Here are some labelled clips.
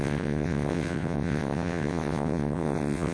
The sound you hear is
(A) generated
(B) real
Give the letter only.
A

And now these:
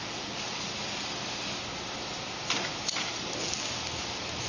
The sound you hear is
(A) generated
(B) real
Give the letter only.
B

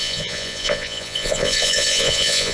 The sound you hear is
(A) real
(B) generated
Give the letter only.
B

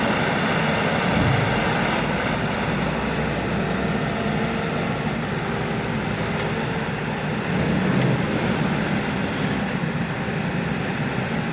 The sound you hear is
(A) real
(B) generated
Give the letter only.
A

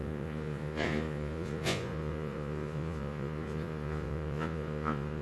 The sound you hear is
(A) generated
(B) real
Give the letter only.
A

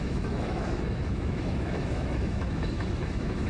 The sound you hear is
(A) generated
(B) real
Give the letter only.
A